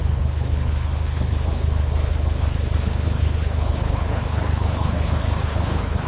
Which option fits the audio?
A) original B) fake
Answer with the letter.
B